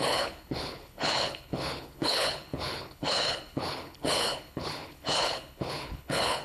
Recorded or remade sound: remade